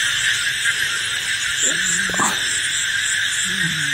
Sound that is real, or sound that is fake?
real